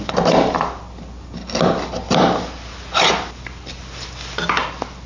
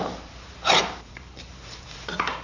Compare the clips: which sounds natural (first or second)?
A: first